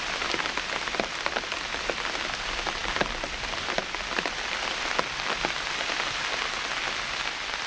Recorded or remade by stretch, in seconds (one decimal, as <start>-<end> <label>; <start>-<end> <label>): 0.0-7.7 recorded